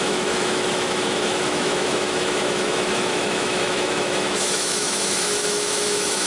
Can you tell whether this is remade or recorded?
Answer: remade